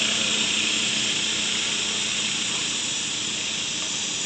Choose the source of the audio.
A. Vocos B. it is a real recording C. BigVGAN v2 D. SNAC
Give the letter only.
C